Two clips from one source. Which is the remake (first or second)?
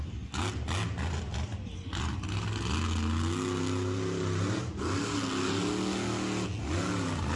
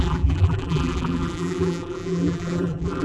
second